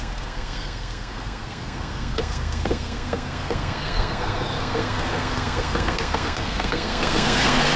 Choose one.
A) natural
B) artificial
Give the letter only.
B